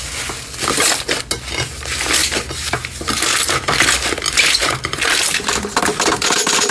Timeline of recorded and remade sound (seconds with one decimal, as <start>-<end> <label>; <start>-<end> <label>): 0.0-2.2 recorded; 2.2-3.7 remade; 3.7-4.6 recorded; 4.6-6.7 remade